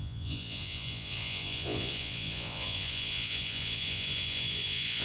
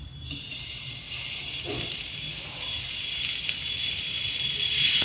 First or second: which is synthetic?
first